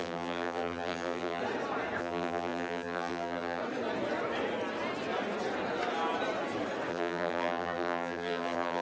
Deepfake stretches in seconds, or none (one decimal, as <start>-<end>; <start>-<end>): 0.0-1.4; 2.0-3.6; 6.9-8.8